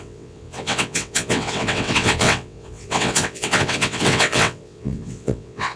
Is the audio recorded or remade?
remade